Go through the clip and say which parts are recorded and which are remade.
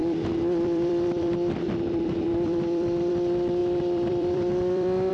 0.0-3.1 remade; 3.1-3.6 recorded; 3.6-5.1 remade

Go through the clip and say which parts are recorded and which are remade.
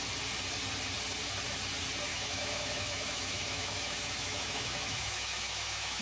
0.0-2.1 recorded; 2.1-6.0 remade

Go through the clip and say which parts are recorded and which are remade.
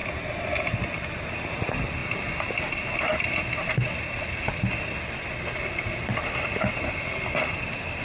0.0-8.0 recorded